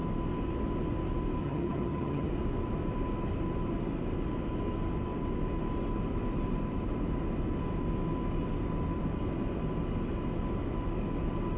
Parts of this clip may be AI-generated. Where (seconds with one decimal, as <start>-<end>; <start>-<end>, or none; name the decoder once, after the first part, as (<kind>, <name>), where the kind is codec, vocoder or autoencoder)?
1.4-2.3 (vocoder, HiFi-GAN)